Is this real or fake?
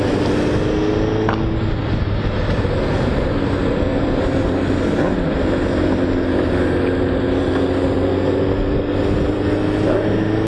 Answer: real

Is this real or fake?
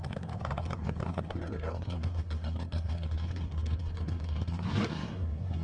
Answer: fake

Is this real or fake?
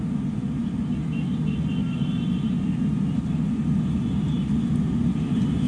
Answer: real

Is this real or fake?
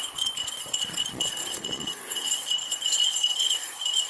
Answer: fake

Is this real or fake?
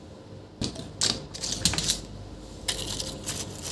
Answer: real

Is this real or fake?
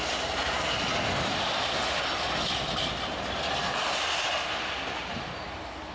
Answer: real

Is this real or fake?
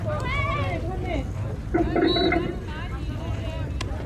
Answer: real